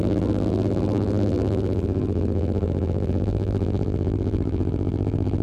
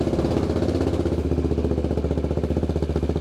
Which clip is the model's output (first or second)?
first